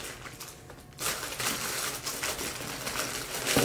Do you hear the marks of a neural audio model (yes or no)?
no